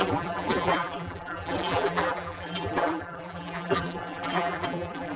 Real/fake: fake